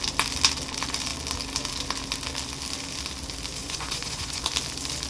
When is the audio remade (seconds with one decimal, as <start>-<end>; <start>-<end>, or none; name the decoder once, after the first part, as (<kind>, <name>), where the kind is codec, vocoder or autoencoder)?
3.6-4.4 (vocoder, Vocos)